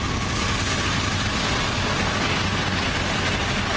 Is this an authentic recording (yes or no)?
yes